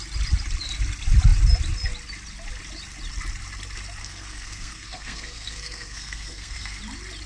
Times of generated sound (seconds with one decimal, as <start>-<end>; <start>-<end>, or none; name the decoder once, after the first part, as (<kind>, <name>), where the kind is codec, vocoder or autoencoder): 4.0-6.8 (codec, SNAC)